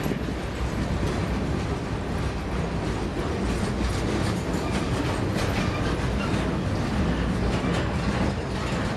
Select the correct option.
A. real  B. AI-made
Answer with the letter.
A